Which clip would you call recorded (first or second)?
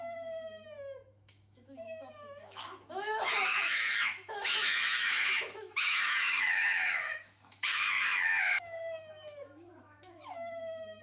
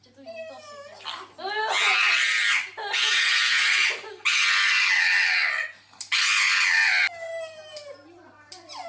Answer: second